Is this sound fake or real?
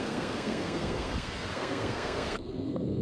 fake